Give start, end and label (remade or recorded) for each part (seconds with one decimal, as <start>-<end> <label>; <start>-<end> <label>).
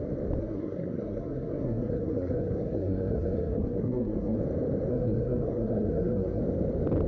0.0-0.4 recorded; 0.4-4.4 remade; 4.4-4.9 recorded; 4.9-6.4 remade; 6.4-7.1 recorded